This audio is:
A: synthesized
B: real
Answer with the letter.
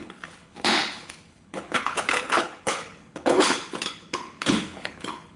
A